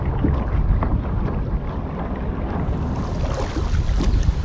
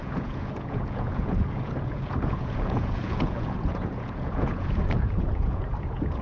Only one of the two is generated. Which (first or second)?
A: second